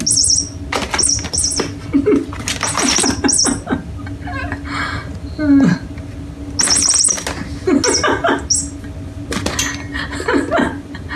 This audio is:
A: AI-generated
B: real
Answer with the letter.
B